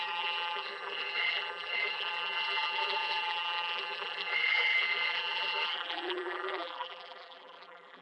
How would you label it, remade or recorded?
remade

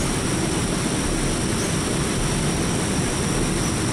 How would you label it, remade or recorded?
recorded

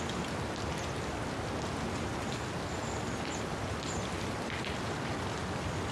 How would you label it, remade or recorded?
recorded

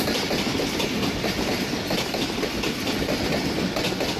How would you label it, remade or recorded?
recorded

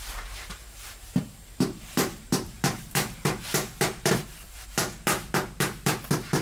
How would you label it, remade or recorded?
remade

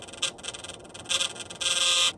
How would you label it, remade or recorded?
recorded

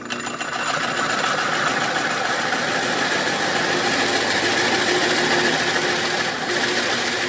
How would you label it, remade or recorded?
recorded